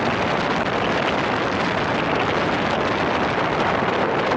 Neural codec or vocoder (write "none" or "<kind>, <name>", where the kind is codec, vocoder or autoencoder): none